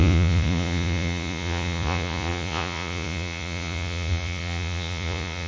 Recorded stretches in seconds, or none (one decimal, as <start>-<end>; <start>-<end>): none